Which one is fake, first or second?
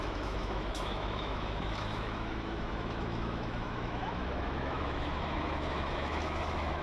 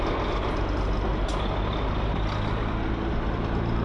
first